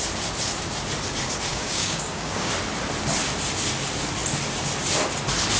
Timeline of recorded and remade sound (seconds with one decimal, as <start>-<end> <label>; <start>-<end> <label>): 0.0-1.5 recorded; 1.5-2.5 remade; 2.5-5.6 recorded